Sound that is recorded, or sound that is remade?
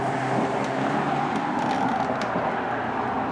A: recorded